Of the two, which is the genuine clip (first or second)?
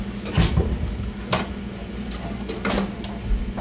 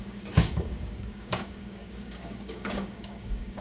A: first